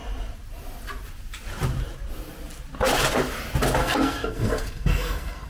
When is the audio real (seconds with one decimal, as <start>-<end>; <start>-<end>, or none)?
0.0-3.8

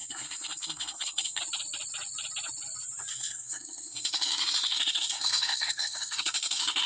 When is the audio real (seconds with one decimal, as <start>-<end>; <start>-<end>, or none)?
1.4-3.1

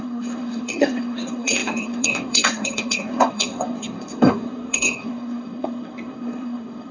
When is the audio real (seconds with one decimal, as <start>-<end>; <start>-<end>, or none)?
none

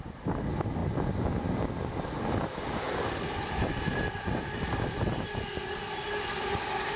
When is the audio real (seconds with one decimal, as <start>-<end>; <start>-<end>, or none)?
0.0-7.0

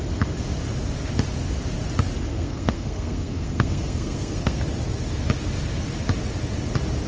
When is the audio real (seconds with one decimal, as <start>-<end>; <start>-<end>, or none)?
0.0-2.3; 4.6-7.1